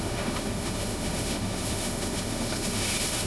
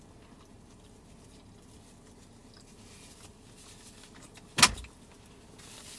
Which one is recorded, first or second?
second